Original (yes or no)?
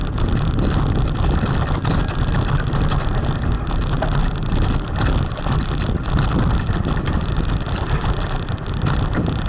yes